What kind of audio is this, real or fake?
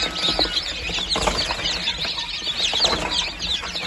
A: real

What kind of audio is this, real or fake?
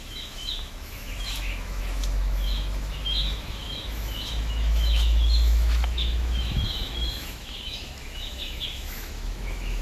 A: fake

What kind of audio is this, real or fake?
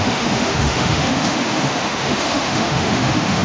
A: fake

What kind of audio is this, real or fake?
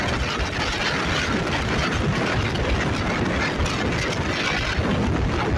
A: real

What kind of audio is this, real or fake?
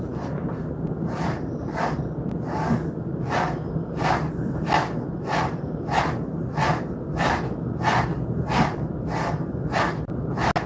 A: real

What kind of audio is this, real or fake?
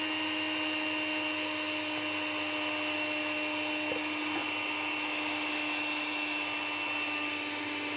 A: real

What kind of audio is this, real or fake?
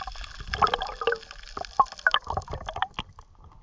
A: real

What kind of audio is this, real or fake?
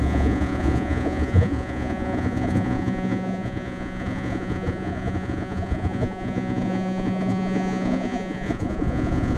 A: fake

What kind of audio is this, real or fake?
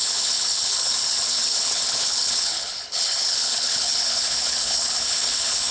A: fake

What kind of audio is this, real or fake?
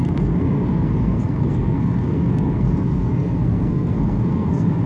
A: fake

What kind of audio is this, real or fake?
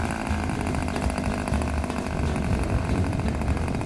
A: real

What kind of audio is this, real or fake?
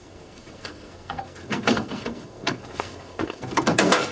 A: fake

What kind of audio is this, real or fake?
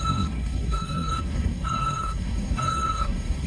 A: fake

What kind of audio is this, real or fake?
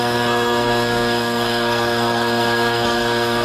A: fake